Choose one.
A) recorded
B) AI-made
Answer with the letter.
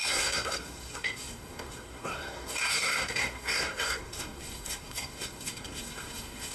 B